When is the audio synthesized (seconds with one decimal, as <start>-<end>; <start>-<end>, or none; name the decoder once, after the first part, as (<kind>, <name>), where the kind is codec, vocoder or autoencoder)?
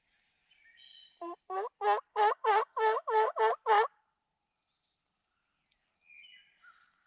2.1-3.4 (autoencoder, DAC-VAE)